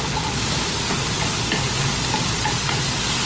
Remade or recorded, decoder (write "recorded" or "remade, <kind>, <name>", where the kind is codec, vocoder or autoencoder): recorded